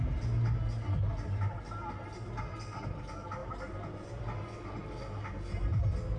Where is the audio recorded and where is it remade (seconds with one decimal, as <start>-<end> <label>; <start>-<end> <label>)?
0.0-6.2 recorded